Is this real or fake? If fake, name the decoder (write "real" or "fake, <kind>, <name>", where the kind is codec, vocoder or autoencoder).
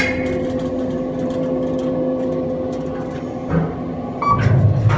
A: real